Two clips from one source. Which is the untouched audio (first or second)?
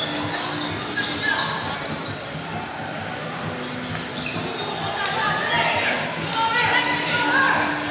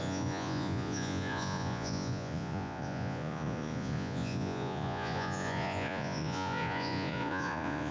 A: first